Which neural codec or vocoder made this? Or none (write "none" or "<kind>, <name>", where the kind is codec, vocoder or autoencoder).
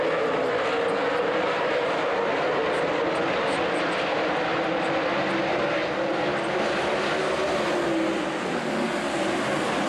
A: none